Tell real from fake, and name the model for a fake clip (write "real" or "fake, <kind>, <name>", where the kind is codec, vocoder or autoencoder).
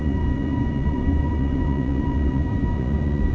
fake, vocoder, Vocos